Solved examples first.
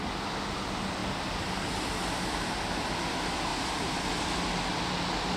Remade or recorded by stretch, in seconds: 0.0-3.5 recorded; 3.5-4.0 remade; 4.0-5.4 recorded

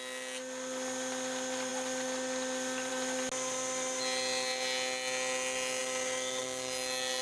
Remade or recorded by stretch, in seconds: 0.0-7.2 recorded

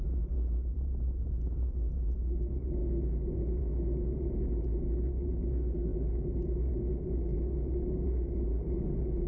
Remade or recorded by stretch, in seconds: 0.0-9.3 recorded

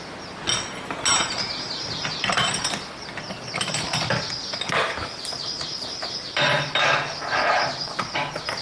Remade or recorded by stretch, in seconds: 0.0-1.1 recorded; 1.1-3.1 remade; 3.1-8.6 recorded